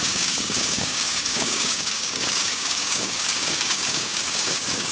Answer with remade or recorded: remade